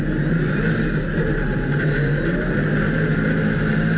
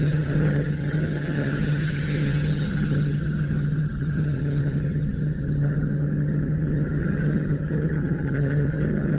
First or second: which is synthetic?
second